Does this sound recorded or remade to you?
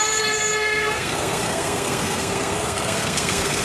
remade